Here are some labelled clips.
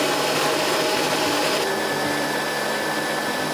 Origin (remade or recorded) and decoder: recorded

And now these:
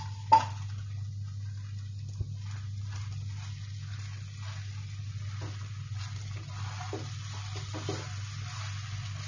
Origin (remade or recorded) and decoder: recorded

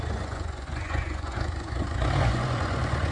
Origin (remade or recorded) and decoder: remade, vocoder, Vocos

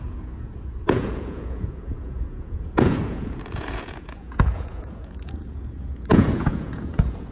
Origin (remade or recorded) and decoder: remade, vocoder, Vocos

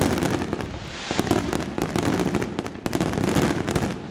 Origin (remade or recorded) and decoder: recorded